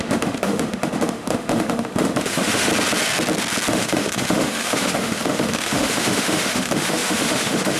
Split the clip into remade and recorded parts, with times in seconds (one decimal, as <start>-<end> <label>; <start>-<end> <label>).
0.0-2.7 remade; 2.7-3.7 recorded; 3.7-7.8 remade